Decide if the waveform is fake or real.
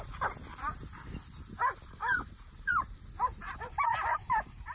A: real